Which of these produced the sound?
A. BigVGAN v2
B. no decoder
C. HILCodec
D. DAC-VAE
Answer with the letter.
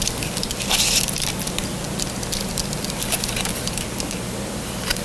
B